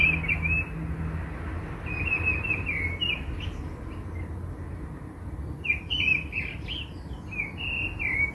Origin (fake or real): real